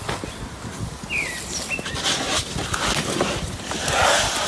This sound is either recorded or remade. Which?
recorded